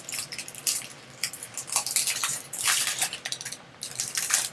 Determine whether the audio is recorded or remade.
remade